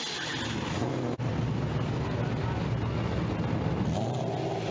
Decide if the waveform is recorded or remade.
recorded